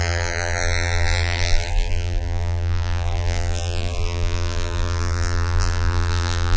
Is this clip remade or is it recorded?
remade